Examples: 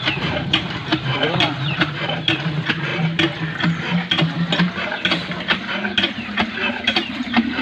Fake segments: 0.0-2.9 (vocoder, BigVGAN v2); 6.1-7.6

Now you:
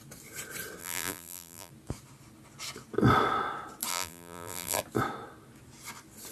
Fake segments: 0.8-1.7 (vocoder, BigVGAN v2); 3.9-4.8

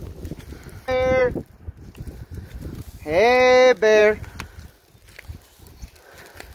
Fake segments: 1.2-2.8 (vocoder, BigVGAN v2)

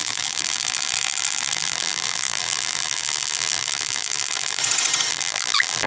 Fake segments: 0.0-4.6 (vocoder, BigVGAN v2); 5.1-5.9

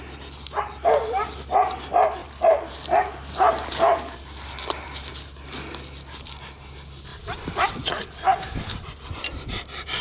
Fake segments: 2.2-5.1 (vocoder, BigVGAN v2); 7.1-7.7

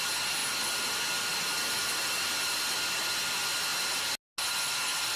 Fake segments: none

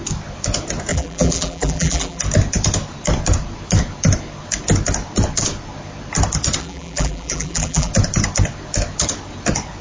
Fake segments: 0.9-2.2 (vocoder, BigVGAN v2); 6.6-7.9

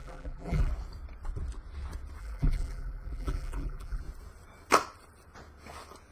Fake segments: 0.0-0.7 (vocoder, BigVGAN v2); 2.2-4.0